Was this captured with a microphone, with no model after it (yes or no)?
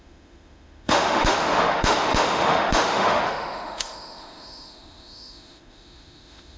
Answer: no